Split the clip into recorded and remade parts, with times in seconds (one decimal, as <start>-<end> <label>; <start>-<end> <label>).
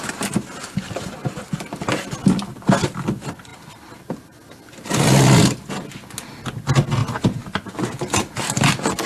0.0-7.0 recorded; 7.0-7.7 remade; 7.7-9.1 recorded